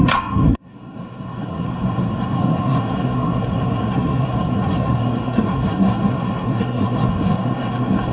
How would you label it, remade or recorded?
remade